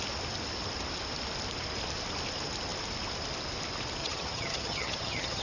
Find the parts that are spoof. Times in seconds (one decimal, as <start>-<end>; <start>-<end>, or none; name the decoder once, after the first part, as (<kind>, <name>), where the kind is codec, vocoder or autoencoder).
4.0-5.4 (vocoder, HiFi-GAN)